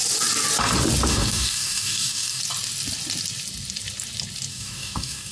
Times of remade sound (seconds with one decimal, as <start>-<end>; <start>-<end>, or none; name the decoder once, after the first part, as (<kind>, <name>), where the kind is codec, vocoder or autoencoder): 1.1-2.4 (codec, DAC); 4.5-5.3